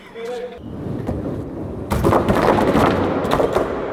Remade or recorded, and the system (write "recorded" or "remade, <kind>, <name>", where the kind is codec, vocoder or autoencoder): recorded